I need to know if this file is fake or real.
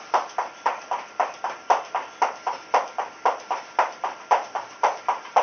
fake